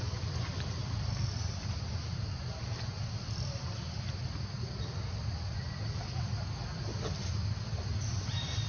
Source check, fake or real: real